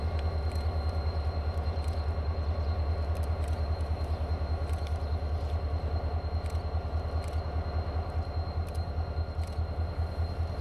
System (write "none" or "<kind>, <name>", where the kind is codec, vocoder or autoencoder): none